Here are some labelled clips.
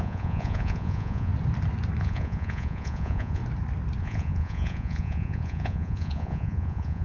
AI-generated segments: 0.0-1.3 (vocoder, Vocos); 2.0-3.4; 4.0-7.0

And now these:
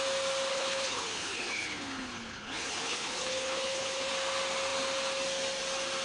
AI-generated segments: 0.5-4.1 (codec, HILCodec)

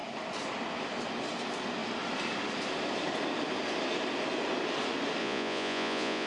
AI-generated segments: 5.2-6.3 (vocoder, Vocos)

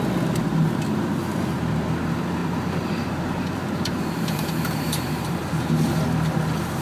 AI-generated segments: 2.4-5.5 (vocoder, BigVGAN v2)